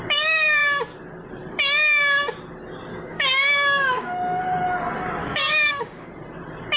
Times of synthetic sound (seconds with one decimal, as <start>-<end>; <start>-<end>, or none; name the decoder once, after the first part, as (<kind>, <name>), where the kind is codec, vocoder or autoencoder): 2.9-4.4 (codec, DAC); 5.2-6.1